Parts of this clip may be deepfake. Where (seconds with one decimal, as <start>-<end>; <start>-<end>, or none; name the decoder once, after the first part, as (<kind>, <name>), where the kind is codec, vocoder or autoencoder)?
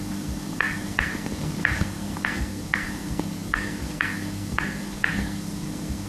0.0-6.1 (codec, SNAC)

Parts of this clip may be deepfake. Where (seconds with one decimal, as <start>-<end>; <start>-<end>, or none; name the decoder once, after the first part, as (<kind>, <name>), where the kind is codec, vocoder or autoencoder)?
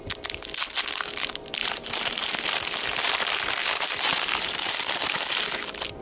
1.6-2.2 (vocoder, BigVGAN v2); 3.6-4.7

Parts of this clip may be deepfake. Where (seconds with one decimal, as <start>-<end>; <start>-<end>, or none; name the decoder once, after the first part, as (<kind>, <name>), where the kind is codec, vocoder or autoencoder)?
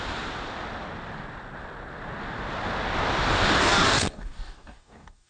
3.6-5.3 (codec, DAC)